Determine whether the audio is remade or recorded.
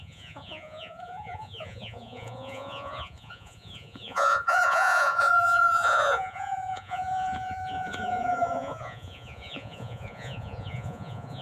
remade